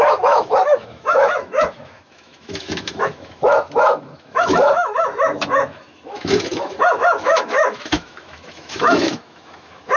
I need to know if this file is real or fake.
fake